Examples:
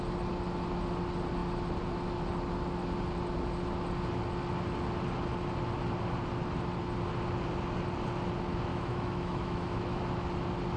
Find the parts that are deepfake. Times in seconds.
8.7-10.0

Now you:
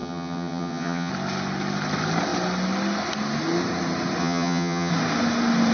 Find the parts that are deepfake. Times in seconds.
0.0-1.1; 4.2-4.9

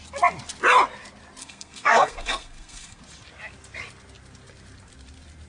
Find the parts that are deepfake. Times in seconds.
1.4-3.0

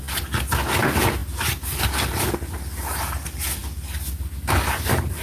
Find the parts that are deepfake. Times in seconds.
none

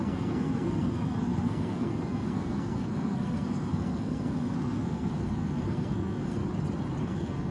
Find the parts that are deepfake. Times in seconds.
0.0-6.4; 7.0-7.5

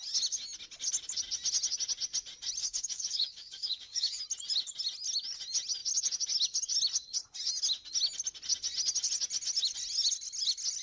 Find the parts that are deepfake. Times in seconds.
2.6-4.2